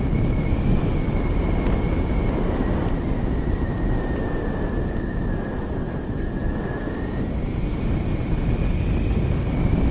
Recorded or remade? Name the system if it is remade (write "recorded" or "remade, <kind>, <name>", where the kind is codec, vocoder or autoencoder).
recorded